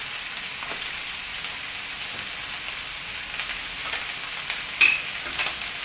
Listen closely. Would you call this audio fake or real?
real